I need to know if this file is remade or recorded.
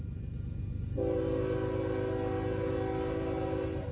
recorded